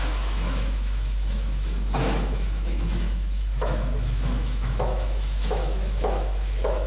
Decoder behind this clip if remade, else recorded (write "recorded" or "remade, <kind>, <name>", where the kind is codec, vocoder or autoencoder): remade, autoencoder, DAC-VAE